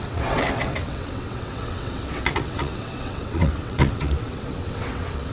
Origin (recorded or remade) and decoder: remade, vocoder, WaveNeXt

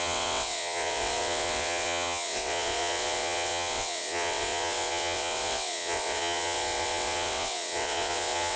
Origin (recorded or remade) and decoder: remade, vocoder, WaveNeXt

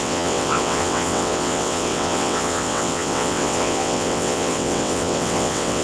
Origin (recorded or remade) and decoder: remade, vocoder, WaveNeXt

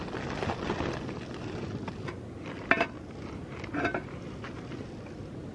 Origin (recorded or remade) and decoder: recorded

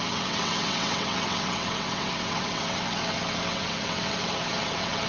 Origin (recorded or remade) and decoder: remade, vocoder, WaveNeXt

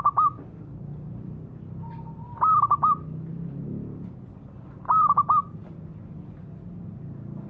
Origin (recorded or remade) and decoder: recorded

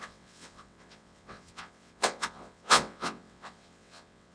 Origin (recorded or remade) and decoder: remade, vocoder, WaveNeXt